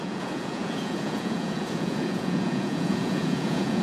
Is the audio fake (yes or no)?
yes